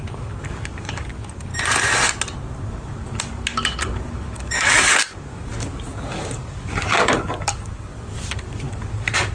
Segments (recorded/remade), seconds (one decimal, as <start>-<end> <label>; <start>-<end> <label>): 0.0-1.5 remade; 1.5-2.7 recorded; 2.7-9.3 remade